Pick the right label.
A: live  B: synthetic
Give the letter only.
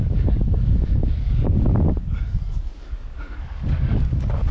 B